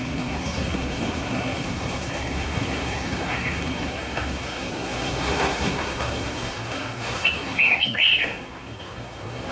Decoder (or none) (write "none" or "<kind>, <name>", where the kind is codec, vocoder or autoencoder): codec, SNAC